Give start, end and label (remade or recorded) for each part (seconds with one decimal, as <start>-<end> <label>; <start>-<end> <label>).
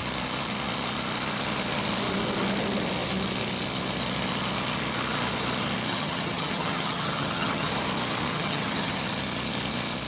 0.0-5.9 recorded; 5.9-7.7 remade; 7.7-8.3 recorded; 8.3-9.0 remade; 9.0-10.1 recorded